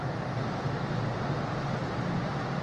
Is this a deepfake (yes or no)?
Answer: no